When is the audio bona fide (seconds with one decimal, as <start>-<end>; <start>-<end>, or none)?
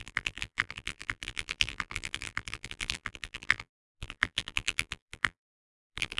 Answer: none